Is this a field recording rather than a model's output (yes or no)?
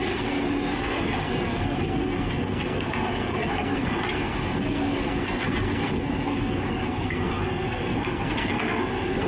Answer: no